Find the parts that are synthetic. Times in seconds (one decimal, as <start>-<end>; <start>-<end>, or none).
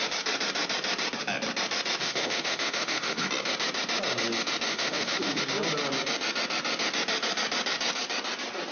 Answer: 2.0-3.3; 4.7-5.4